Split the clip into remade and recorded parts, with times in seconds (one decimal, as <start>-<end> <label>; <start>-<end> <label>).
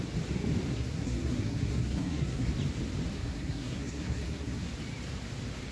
0.0-0.7 recorded; 0.7-2.5 remade; 2.5-3.1 recorded; 3.1-4.7 remade; 4.7-5.7 recorded